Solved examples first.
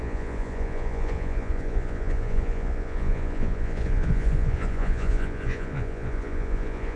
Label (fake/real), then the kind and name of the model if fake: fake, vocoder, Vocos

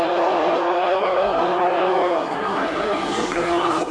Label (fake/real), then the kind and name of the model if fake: fake, codec, SNAC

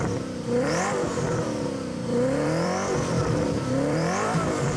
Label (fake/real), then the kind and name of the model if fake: fake, vocoder, BigVGAN v2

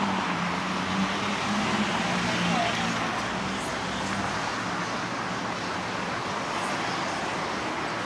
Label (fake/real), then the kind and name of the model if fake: real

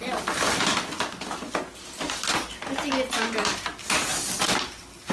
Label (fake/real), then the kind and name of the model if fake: real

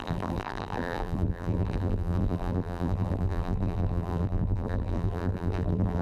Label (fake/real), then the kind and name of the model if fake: fake, vocoder, BigVGAN v2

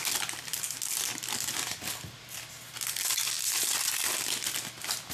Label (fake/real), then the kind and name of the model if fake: real